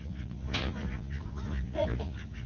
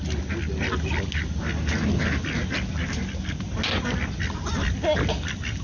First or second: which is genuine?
second